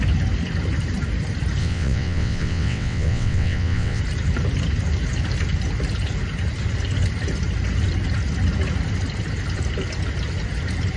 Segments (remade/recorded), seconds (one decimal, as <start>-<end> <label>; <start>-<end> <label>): 0.0-1.6 recorded; 1.6-4.0 remade; 4.0-11.0 recorded